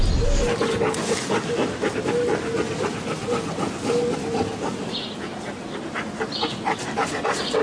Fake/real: real